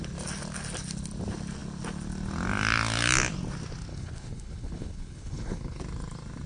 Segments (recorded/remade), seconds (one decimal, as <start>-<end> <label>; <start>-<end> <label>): 0.0-3.9 recorded; 3.9-5.8 remade; 5.8-6.5 recorded

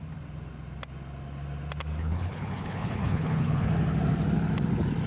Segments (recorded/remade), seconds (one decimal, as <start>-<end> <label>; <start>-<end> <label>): 0.0-2.0 recorded; 2.0-3.7 remade; 3.7-5.1 recorded